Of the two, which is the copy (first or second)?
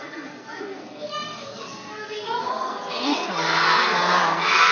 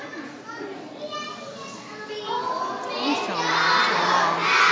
first